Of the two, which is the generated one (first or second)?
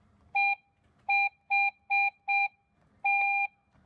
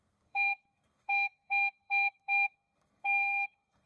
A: second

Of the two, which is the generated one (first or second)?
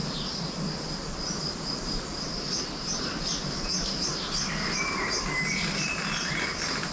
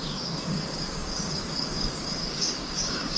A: second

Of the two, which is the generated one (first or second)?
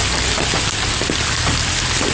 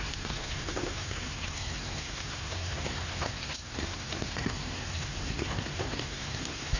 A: second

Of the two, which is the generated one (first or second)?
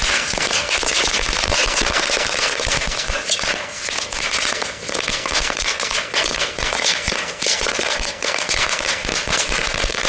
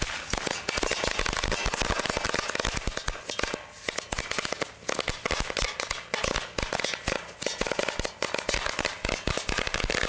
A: first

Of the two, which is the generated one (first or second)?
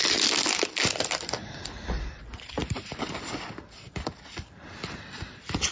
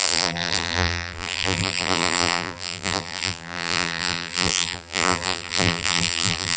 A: second